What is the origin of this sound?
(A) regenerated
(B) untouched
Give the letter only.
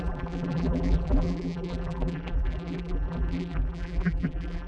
A